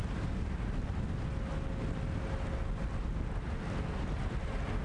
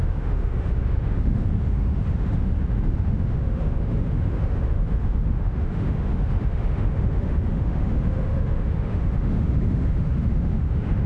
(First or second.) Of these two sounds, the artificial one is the second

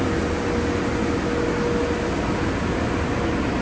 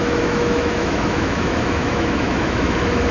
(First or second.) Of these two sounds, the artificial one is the second